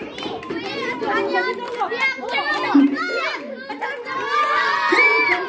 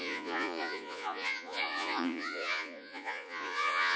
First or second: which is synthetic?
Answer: second